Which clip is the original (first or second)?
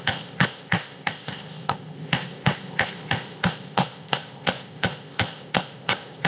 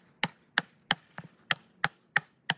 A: second